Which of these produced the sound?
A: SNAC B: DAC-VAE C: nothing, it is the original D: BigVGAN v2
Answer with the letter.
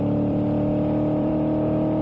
D